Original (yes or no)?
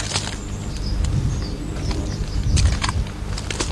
yes